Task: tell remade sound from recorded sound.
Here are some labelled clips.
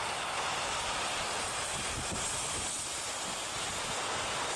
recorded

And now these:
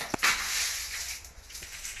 remade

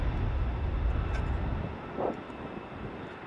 recorded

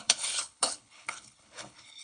remade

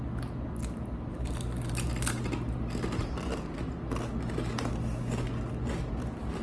recorded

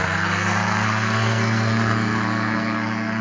remade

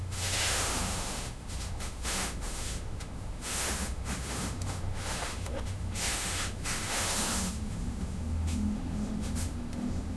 remade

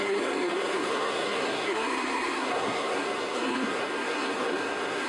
remade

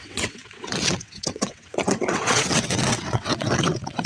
remade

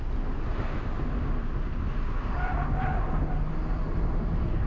recorded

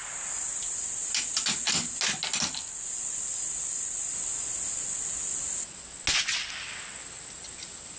recorded